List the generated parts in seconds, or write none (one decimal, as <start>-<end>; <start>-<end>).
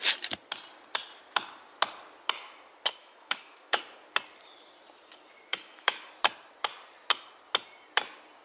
3.0-3.8; 5.5-6.1